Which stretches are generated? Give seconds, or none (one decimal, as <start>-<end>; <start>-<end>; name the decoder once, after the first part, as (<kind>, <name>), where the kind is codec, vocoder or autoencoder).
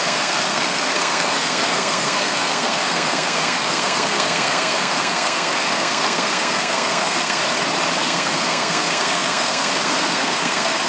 0.0-7.4 (codec, SNAC); 8.0-10.9